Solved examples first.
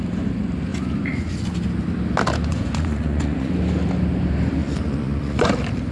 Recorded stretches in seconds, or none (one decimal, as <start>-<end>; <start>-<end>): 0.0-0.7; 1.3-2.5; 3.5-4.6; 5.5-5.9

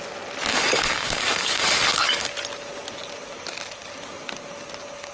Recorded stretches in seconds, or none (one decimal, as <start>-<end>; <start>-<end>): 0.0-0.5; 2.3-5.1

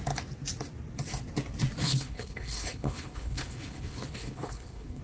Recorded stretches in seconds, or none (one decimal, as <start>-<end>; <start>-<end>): 0.0-1.8

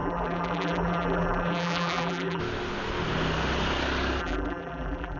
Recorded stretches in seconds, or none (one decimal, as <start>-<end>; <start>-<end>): 2.4-4.2

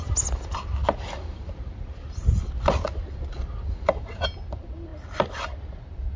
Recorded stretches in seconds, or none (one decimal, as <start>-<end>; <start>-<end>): 0.0-6.2